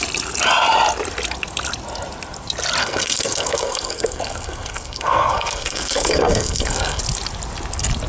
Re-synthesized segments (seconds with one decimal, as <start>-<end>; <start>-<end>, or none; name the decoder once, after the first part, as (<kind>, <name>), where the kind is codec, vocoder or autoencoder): 2.8-7.0 (codec, SNAC)